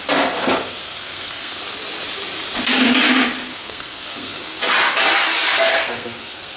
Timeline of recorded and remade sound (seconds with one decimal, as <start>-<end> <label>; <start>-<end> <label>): 0.0-0.4 recorded; 0.4-1.6 remade; 1.6-3.5 recorded; 3.5-4.6 remade; 4.6-5.7 recorded; 5.7-6.6 remade